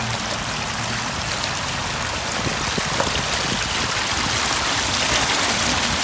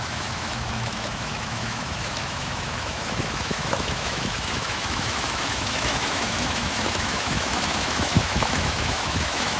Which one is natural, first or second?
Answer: first